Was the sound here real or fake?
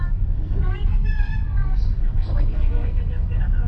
fake